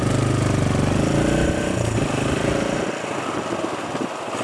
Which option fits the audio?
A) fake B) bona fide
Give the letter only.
B